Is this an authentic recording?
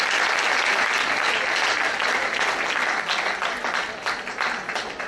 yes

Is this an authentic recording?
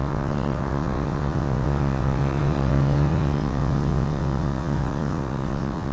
no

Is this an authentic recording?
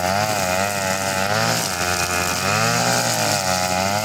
yes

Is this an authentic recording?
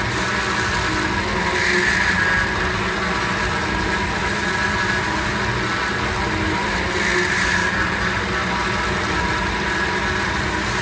yes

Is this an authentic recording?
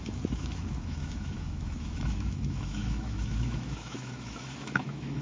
no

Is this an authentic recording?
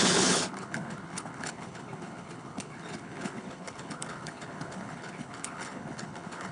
no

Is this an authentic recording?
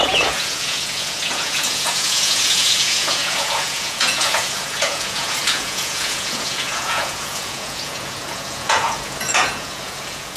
no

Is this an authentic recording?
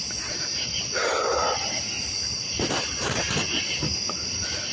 yes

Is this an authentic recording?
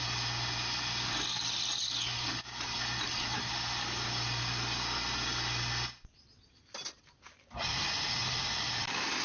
yes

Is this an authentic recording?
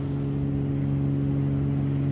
yes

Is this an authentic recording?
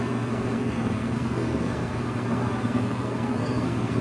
no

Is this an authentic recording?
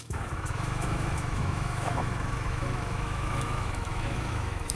no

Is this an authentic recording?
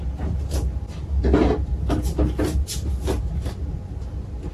yes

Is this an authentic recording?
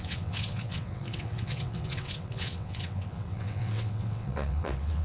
no